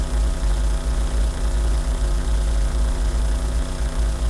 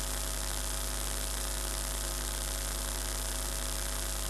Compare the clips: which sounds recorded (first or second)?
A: second